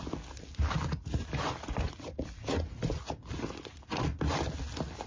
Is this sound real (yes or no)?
yes